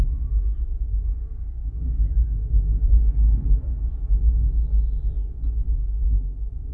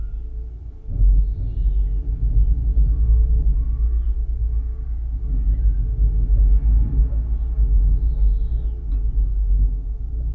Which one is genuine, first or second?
second